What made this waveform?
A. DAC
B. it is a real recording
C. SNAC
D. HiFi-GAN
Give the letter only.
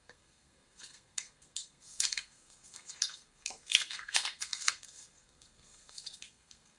C